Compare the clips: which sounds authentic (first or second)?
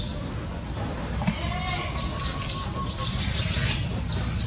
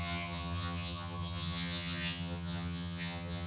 first